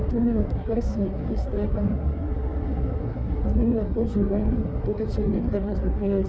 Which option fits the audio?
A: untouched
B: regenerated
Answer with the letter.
B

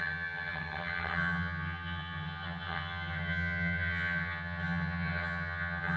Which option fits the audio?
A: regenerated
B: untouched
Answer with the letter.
A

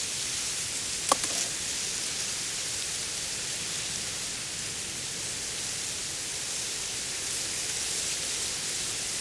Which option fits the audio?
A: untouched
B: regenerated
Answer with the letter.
A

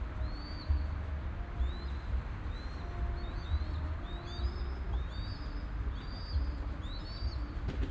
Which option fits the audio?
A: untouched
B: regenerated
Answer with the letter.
A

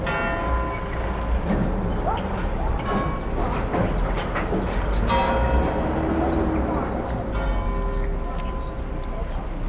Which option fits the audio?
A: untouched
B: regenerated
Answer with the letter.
A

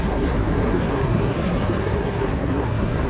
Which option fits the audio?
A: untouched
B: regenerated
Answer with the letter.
B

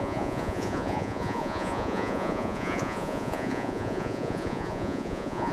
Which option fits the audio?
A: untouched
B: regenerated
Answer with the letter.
B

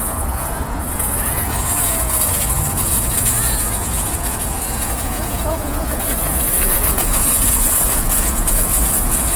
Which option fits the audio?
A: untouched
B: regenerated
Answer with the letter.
B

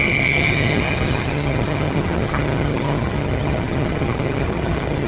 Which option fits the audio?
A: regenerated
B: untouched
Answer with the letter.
A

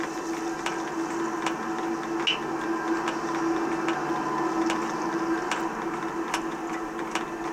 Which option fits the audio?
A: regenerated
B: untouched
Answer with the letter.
B